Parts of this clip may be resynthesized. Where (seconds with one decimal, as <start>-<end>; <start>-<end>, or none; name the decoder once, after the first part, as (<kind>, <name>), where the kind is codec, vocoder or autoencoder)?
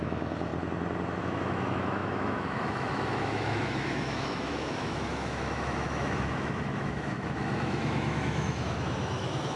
0.0-0.5 (autoencoder, DAC-VAE); 1.2-9.6